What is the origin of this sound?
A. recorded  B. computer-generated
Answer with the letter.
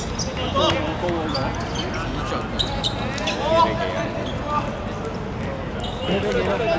A